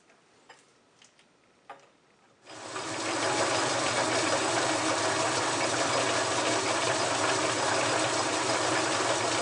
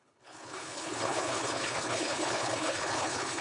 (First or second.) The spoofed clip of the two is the second